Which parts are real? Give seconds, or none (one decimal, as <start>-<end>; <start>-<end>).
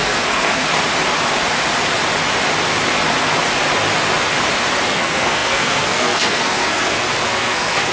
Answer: 0.6-4.9